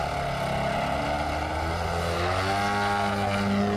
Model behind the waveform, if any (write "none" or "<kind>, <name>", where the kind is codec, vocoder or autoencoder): none